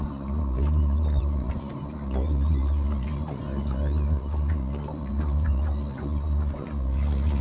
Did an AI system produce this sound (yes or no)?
yes